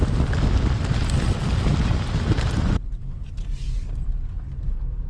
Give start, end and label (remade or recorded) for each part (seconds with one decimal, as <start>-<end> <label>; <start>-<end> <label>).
0.0-5.1 recorded